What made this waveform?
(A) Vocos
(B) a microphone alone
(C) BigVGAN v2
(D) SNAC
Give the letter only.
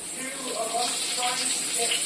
B